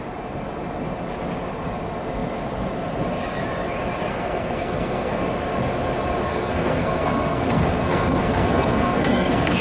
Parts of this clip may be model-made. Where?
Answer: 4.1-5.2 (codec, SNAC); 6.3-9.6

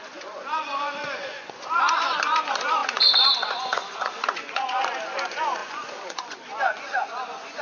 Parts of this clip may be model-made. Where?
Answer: 0.0-7.6 (vocoder, Vocos)

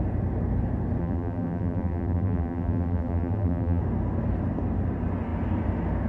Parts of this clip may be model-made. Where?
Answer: 1.0-3.8 (vocoder, BigVGAN v2)